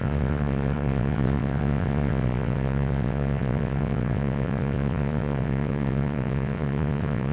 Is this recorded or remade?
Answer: remade